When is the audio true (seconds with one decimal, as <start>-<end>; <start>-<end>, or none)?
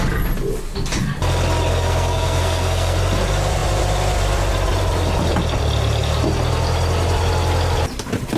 0.0-1.7; 3.0-8.4